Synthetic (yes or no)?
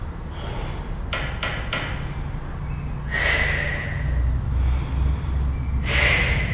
no